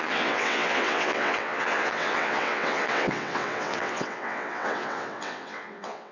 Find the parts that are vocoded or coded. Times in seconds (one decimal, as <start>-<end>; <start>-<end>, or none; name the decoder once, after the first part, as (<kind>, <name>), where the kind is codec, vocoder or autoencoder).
0.0-6.1 (vocoder, WaveNeXt)